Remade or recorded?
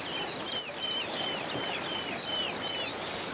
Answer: recorded